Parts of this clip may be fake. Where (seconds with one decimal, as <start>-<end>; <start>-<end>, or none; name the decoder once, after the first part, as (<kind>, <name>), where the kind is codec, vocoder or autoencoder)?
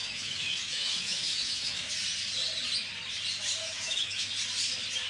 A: 0.0-1.9 (autoencoder, DAC-VAE); 3.6-4.3